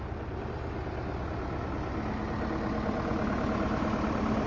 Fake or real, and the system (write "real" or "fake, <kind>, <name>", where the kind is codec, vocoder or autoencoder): real